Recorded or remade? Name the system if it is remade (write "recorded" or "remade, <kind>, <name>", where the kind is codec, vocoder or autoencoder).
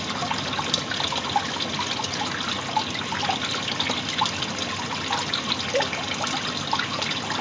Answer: recorded